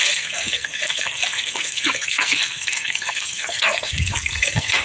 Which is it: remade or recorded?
remade